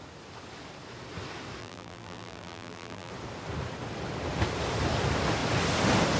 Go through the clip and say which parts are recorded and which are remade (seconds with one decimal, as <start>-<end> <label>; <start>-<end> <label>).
0.0-1.6 recorded; 1.6-3.1 remade; 3.1-6.2 recorded